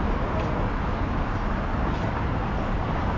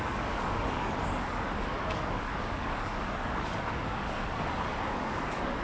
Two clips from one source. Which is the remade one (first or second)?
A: second